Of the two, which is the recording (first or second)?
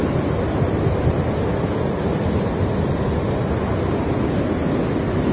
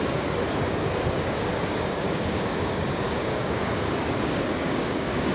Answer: first